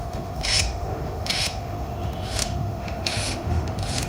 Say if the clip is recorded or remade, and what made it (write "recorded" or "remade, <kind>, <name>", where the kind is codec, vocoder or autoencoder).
remade, autoencoder, DAC-VAE